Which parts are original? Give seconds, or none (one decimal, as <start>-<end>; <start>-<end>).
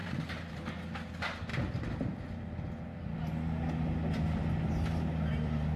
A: 0.6-5.8